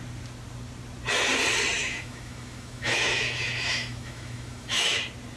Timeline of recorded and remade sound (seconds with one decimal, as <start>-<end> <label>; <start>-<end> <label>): 0.0-1.8 recorded; 1.8-5.0 remade; 5.0-5.4 recorded